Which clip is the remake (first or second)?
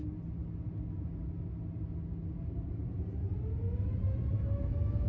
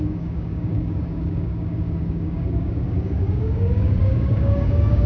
second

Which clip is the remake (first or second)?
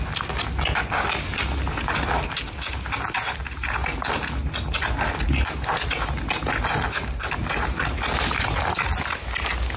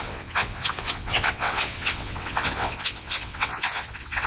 second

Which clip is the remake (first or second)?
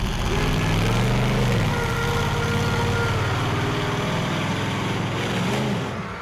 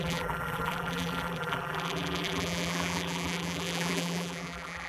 second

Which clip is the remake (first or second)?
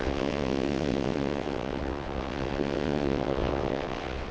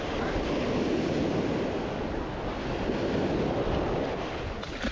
first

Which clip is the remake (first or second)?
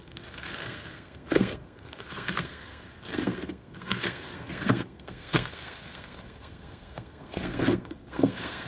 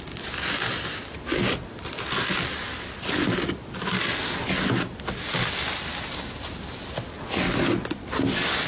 first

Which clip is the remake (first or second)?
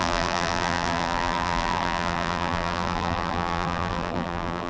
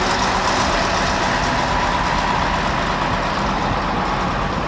first